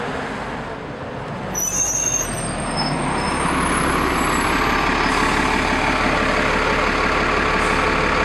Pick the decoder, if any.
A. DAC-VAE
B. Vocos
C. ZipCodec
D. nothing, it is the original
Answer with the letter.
D